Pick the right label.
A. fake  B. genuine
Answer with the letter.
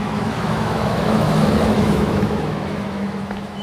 A